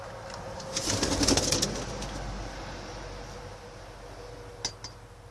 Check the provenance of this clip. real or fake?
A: real